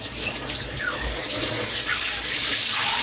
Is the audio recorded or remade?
remade